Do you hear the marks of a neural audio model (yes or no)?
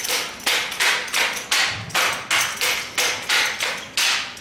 no